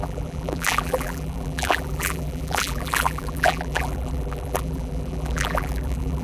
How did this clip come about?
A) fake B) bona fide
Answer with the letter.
A